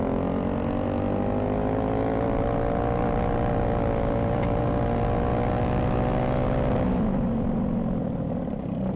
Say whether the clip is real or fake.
real